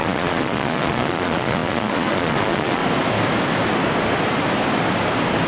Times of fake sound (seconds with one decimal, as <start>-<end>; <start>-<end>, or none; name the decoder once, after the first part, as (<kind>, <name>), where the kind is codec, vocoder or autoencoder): 0.0-2.8 (vocoder, Vocos)